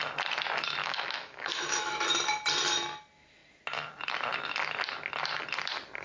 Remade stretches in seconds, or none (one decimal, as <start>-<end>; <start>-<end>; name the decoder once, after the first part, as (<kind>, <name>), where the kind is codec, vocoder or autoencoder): 0.8-2.1 (autoencoder, DAC-VAE)